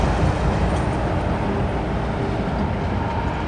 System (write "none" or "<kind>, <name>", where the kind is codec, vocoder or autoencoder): none